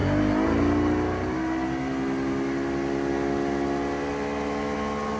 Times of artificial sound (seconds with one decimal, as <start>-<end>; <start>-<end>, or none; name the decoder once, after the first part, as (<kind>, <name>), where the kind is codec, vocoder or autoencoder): none